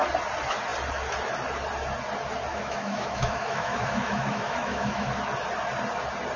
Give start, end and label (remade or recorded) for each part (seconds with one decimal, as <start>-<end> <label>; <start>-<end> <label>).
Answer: 0.0-2.5 recorded; 2.5-5.1 remade; 5.1-6.4 recorded